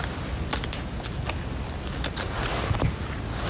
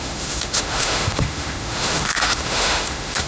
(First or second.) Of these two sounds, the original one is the first